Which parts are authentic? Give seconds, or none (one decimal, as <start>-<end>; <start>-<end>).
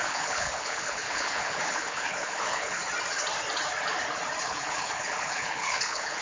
2.8-4.4